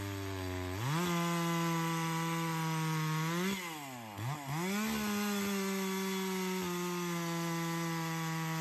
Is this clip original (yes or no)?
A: yes